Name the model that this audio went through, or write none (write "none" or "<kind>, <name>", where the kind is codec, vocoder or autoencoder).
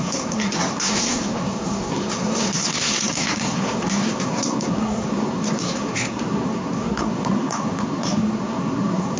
codec, SNAC